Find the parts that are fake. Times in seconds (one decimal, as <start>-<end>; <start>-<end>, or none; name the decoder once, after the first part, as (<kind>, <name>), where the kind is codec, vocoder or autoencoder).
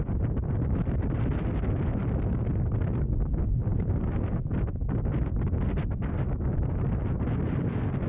3.7-4.6 (vocoder, BigVGAN v2)